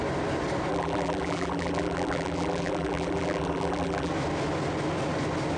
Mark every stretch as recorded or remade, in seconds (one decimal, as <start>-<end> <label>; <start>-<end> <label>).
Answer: 0.0-0.7 recorded; 0.7-4.1 remade; 4.1-5.6 recorded